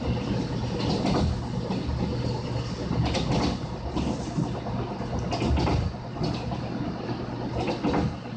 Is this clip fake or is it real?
real